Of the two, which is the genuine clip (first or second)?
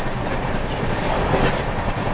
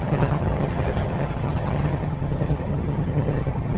first